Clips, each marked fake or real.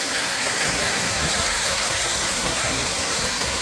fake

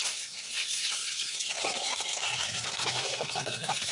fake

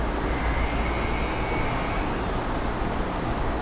real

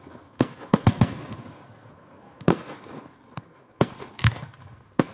fake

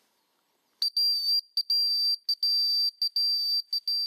real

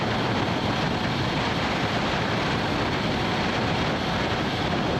real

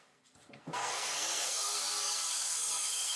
fake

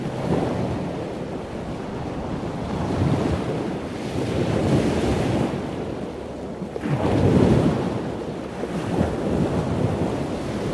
real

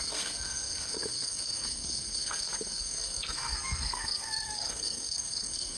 fake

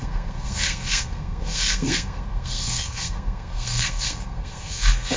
fake